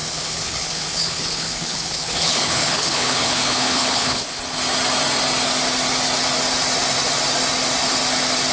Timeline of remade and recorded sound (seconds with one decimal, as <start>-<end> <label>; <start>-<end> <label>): 0.0-4.4 remade; 4.4-8.5 recorded